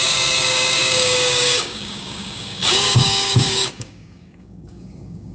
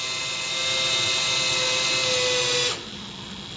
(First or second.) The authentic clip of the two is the second